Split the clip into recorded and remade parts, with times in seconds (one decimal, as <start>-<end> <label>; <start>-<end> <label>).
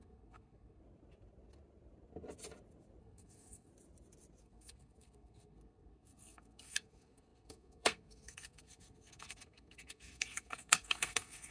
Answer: 0.0-0.8 remade; 0.8-3.0 recorded; 3.0-3.7 remade; 3.7-4.4 recorded; 4.4-11.5 remade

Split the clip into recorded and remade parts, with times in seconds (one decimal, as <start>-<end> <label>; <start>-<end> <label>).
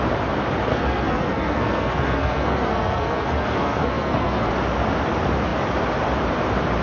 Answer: 0.0-0.7 recorded; 0.7-4.5 remade; 4.5-6.8 recorded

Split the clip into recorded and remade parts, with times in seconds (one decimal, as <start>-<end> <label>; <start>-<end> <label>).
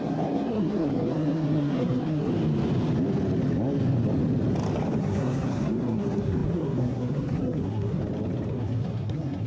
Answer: 0.0-2.3 remade; 2.3-5.0 recorded; 5.0-8.0 remade; 8.0-8.5 recorded; 8.5-9.5 remade